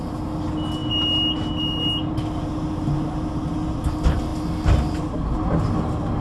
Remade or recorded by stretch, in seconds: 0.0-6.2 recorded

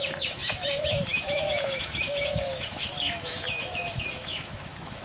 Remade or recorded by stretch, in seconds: 0.0-5.0 remade

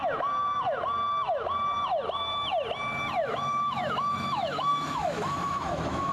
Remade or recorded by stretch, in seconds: 0.0-3.2 recorded; 3.2-6.1 remade

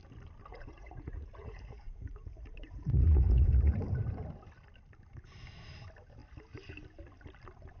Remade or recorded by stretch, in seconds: 0.0-0.5 recorded; 0.5-3.7 remade; 3.7-7.8 recorded

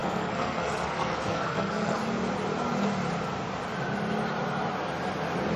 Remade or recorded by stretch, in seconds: 0.0-2.0 remade; 2.0-5.6 recorded